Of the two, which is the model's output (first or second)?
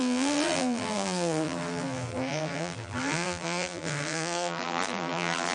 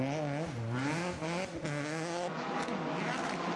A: first